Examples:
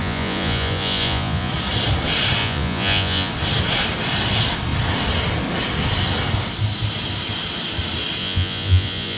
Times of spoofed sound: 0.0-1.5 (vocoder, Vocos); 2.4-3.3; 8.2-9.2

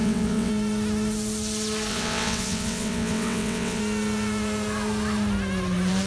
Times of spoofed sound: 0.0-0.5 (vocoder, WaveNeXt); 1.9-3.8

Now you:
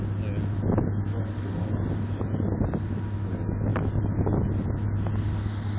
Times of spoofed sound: none

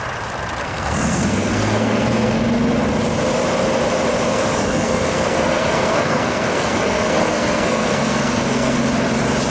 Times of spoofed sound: 0.6-2.4 (codec, SNAC); 4.3-8.8

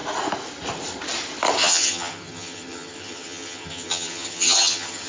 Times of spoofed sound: 1.6-5.1 (vocoder, HiFi-GAN)

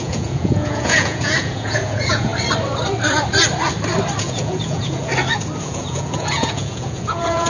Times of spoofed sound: 0.0-2.3 (vocoder, Vocos); 4.2-5.1; 5.6-7.5

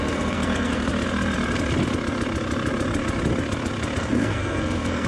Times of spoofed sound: 0.0-0.9 (codec, SNAC); 4.0-5.1

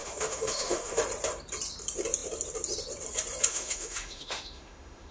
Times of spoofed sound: 0.0-1.0 (autoencoder, DAC-VAE); 3.5-5.1